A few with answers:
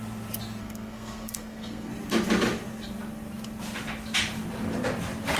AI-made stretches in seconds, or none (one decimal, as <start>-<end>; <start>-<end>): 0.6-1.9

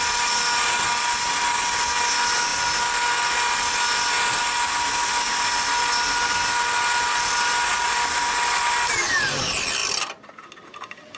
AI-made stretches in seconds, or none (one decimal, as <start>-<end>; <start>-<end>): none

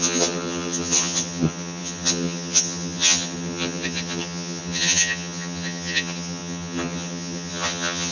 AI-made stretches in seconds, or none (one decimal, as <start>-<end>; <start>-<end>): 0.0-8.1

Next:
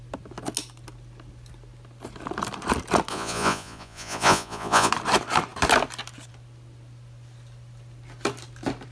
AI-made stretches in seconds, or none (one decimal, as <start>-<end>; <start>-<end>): 3.1-4.9